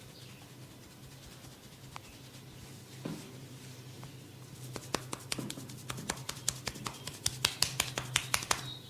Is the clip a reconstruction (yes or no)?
no